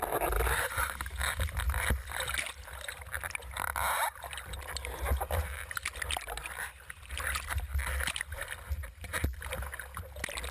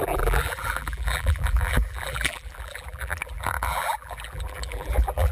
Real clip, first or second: first